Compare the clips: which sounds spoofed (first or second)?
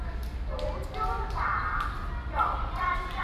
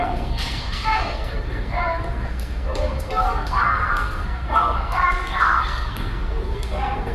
second